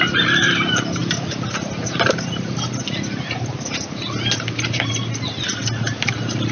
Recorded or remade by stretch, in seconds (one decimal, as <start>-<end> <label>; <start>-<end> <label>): 0.0-6.5 recorded